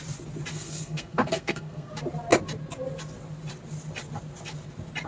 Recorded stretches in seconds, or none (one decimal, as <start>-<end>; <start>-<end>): 0.0-0.5; 1.9-5.1